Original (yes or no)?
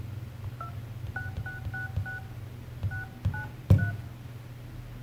yes